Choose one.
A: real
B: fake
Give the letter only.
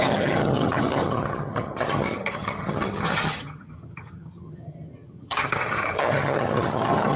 B